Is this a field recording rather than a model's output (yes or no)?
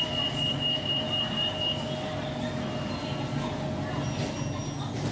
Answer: yes